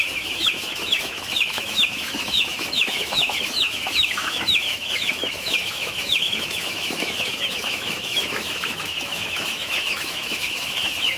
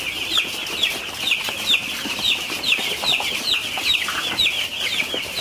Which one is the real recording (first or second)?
second